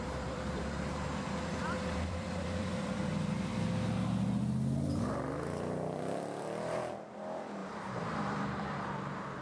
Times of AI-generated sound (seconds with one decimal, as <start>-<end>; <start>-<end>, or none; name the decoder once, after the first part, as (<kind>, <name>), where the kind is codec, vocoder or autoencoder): 0.0-3.5 (vocoder, BigVGAN v2); 4.9-7.6; 8.2-9.4